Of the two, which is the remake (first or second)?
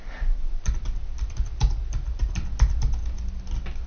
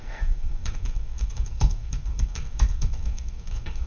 second